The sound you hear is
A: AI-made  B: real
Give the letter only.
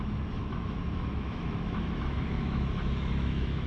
A